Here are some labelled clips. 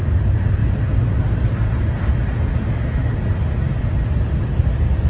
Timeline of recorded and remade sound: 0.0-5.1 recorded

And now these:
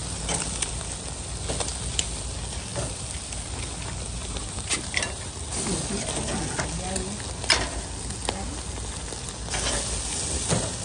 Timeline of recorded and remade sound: 0.0-4.2 recorded; 4.2-5.2 remade; 5.2-10.8 recorded

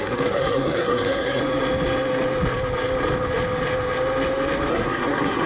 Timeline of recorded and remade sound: 0.0-1.4 remade; 1.4-4.7 recorded; 4.7-5.5 remade

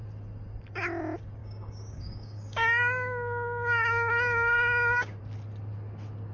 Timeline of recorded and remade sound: 0.0-1.4 recorded; 1.4-5.2 remade; 5.2-6.3 recorded

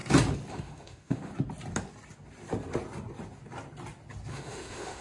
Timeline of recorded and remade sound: 0.0-0.5 recorded; 0.5-1.3 remade; 1.3-4.3 recorded; 4.3-5.0 remade

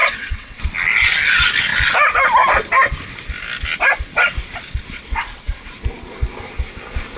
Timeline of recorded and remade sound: 0.0-0.6 remade; 0.6-4.9 recorded; 4.9-5.7 remade; 5.7-7.2 recorded